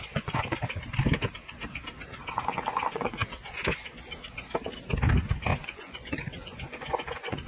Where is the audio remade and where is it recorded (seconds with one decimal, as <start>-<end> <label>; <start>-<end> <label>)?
0.0-0.6 remade; 0.6-2.3 recorded; 2.3-3.2 remade; 3.2-5.6 recorded; 5.6-7.5 remade